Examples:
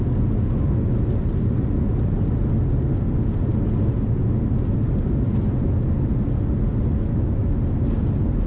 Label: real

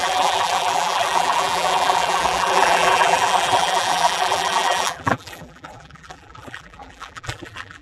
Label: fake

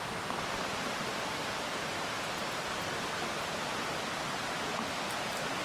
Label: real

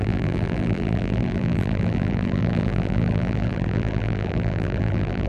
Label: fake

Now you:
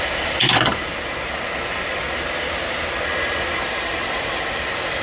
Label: real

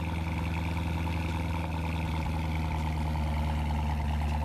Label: real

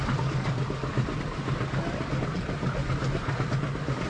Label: fake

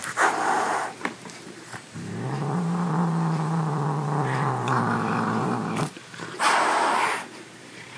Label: fake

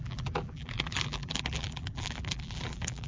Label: fake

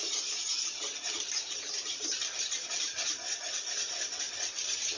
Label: fake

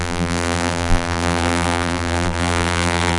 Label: fake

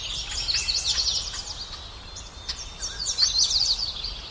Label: real